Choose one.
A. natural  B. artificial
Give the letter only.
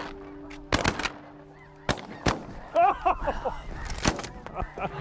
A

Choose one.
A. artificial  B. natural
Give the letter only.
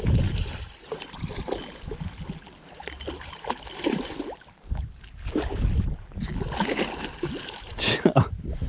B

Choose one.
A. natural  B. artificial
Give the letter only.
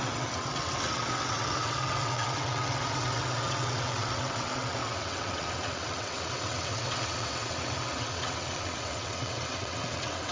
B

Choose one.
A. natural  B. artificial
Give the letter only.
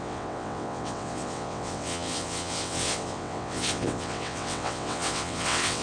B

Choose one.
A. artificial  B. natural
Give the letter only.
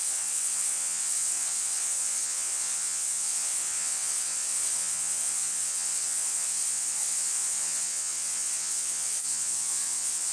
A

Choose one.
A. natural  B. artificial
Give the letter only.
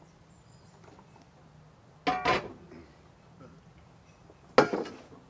A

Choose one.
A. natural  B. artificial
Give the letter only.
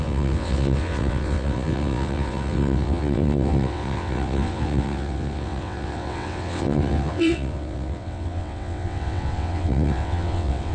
B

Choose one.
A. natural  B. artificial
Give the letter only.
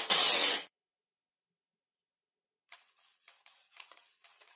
B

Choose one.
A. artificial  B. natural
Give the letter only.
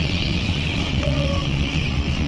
A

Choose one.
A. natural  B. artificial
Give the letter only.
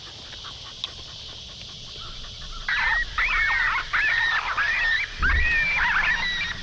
A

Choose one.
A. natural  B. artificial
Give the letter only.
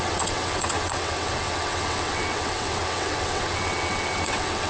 B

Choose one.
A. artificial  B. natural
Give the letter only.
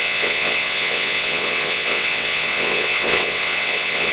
A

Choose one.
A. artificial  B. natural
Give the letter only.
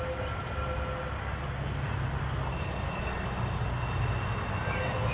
B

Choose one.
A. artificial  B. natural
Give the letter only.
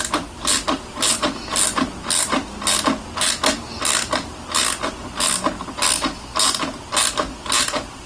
B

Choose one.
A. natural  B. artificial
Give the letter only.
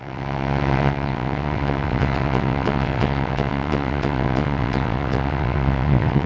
B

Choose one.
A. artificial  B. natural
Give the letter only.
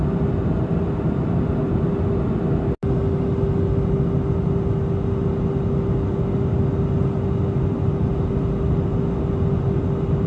B